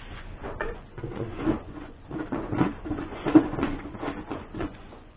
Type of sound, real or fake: fake